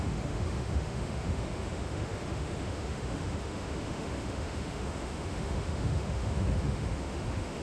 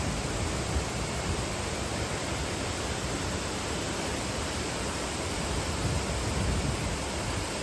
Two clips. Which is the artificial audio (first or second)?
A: first